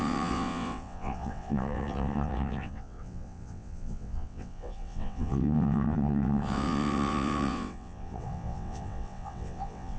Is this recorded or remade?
remade